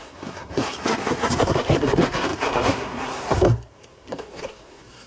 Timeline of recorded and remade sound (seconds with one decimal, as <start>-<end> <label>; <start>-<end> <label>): 0.0-5.1 remade